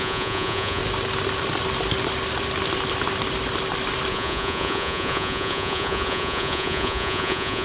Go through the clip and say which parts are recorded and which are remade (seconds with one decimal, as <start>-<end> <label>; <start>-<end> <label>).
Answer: 0.0-0.8 remade; 0.8-4.1 recorded; 4.1-7.6 remade